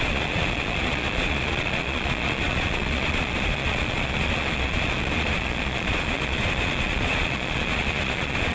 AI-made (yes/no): yes